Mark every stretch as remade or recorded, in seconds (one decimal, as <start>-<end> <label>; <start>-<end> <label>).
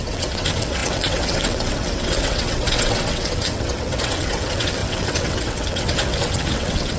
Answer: 0.0-7.0 remade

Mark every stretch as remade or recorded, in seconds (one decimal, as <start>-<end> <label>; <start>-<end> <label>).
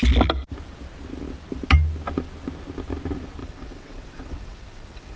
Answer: 0.0-3.4 recorded; 3.4-5.2 remade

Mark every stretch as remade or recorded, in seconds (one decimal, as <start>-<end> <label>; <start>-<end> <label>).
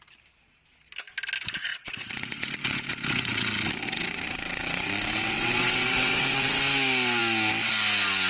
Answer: 0.0-1.7 recorded; 1.7-6.6 remade; 6.6-8.3 recorded